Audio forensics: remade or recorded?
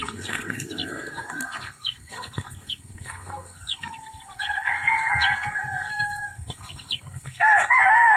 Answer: remade